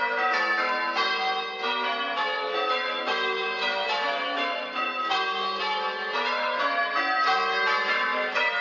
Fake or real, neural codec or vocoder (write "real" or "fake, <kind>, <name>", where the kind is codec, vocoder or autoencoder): real